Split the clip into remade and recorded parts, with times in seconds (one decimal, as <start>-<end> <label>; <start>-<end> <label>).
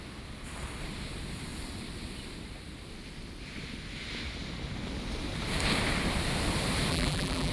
0.0-6.9 recorded; 6.9-7.5 remade